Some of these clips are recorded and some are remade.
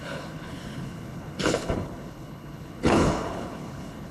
remade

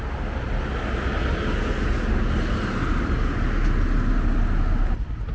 recorded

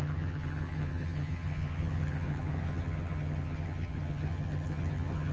remade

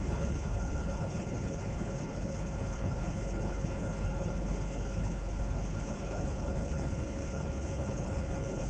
remade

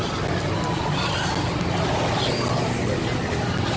recorded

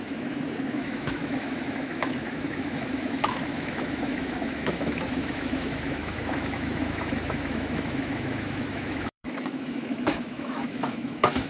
remade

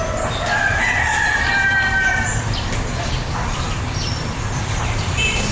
remade